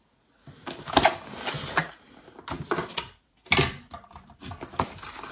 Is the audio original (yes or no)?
no